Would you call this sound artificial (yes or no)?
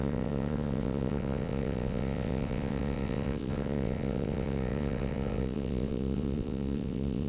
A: yes